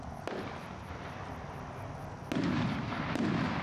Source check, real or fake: real